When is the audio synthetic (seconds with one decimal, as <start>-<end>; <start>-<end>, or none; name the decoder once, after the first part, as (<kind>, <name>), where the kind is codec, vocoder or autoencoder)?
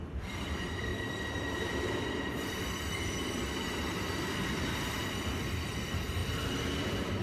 0.0-7.2 (vocoder, BigVGAN v2)